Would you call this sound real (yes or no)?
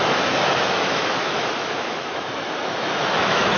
no